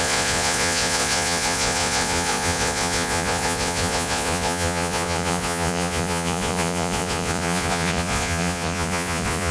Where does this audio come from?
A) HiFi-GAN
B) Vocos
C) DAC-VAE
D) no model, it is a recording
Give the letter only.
B